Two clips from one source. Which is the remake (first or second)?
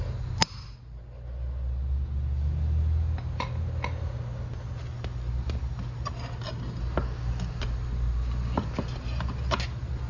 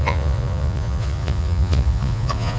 second